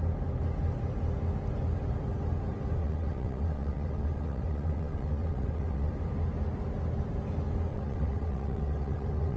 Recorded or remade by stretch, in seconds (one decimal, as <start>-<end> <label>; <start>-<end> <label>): 0.0-2.8 recorded; 2.8-5.9 remade; 5.9-7.7 recorded; 7.7-9.4 remade